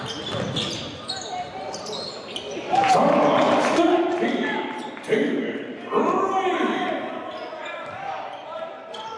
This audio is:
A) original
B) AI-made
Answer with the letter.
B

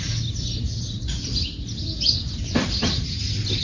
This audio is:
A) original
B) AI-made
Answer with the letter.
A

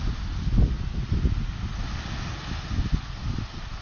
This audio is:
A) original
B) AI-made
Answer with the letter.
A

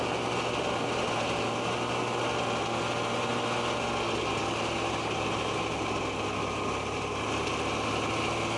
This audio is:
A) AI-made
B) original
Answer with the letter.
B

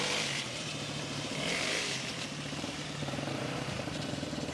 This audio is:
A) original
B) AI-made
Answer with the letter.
B